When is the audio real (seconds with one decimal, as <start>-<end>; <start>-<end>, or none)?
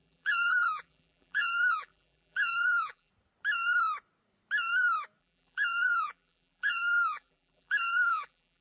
3.1-5.2